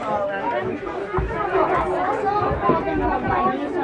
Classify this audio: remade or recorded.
recorded